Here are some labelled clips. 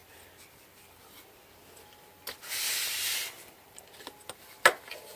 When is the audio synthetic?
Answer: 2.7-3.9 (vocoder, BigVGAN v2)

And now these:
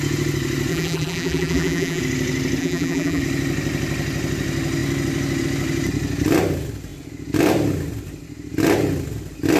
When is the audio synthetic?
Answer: 0.7-2.0 (vocoder, BigVGAN v2); 2.6-3.2

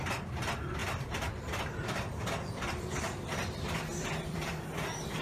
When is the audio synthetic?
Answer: 0.0-5.2 (vocoder, BigVGAN v2)

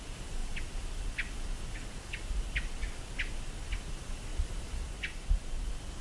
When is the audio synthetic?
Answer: none